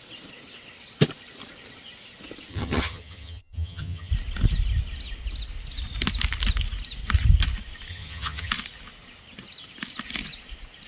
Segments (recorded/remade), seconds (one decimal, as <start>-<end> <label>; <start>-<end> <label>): 0.0-2.5 recorded; 2.5-4.1 remade; 4.1-7.9 recorded; 7.9-8.5 remade; 8.5-10.9 recorded